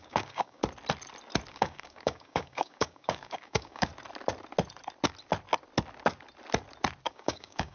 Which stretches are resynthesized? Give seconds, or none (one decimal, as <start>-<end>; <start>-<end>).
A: 0.0-0.6; 1.5-3.9; 7.1-7.7